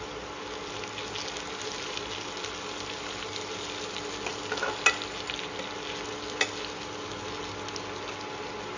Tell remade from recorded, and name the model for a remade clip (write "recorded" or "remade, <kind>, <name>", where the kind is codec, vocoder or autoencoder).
recorded